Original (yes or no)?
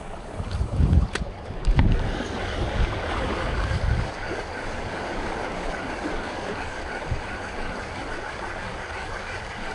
no